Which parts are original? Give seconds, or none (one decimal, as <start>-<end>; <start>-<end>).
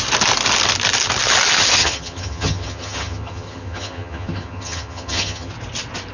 0.0-1.8; 5.5-6.1